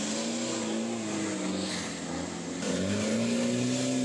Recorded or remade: recorded